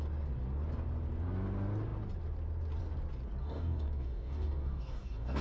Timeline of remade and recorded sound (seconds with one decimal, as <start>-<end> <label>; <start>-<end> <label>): 0.0-3.4 recorded; 3.4-5.4 remade